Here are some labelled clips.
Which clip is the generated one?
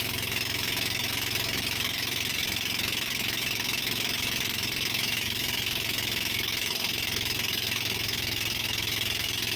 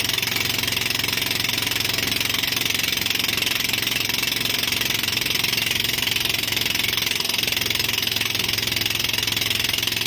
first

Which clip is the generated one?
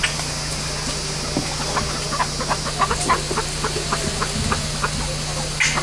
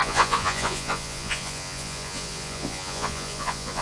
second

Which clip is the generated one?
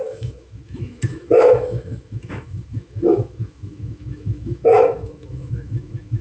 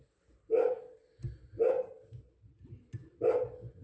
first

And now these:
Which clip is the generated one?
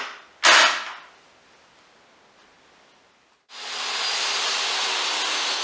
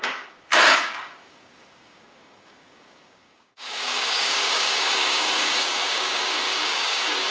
second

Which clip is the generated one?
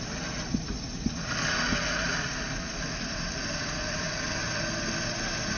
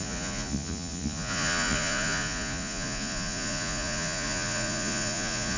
second